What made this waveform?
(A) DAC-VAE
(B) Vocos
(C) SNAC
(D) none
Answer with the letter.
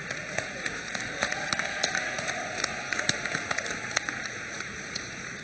B